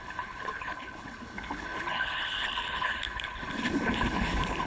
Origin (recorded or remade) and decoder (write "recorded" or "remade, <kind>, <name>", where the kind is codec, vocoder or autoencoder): remade, codec, HILCodec